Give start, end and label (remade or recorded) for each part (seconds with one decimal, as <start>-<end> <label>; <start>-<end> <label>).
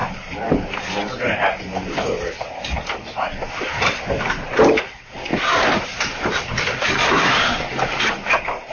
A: 0.0-5.3 recorded; 5.3-8.1 remade; 8.1-8.7 recorded